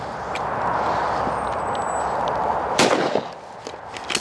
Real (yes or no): yes